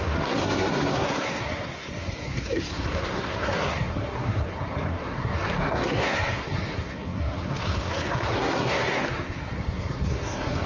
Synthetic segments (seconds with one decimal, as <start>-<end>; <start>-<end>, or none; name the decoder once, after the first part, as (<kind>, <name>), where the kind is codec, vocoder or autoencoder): 0.0-10.7 (codec, SNAC)